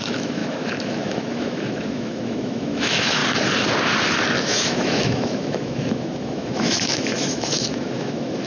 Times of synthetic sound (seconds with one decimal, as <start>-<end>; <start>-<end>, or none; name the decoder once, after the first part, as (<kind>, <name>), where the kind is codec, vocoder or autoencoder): 0.0-3.2 (autoencoder, DAC-VAE); 4.4-8.5